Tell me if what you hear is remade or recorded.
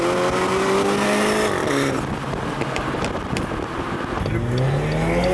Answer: recorded